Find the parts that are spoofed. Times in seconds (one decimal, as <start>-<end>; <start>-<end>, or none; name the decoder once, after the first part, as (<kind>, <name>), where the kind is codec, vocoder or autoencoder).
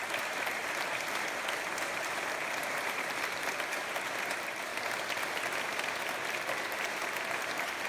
0.0-0.6 (vocoder, BigVGAN v2); 1.8-4.7; 5.6-7.9